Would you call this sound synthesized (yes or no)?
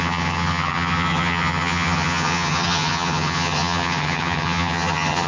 yes